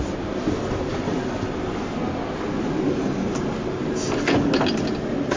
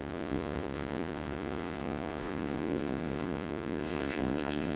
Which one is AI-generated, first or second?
second